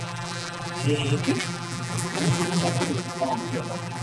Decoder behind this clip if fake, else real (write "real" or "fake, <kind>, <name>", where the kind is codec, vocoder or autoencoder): fake, vocoder, BigVGAN v2